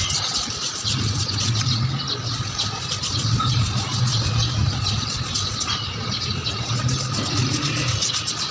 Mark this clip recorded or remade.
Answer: recorded